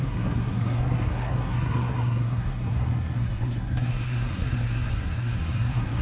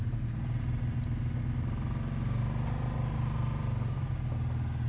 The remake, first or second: first